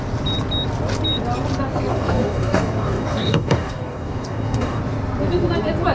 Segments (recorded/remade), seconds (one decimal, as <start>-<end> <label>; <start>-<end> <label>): 0.0-1.9 recorded; 1.9-4.8 remade; 4.8-5.9 recorded